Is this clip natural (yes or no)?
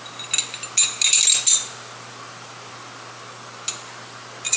yes